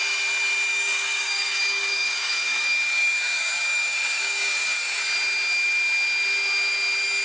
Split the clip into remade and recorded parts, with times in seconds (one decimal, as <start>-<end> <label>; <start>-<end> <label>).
0.0-0.7 recorded; 0.7-5.0 remade; 5.0-7.2 recorded